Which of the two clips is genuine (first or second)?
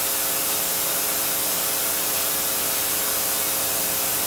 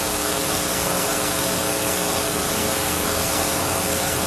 first